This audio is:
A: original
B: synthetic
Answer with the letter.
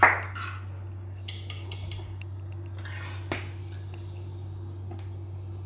A